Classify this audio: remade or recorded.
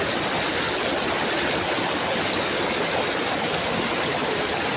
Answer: recorded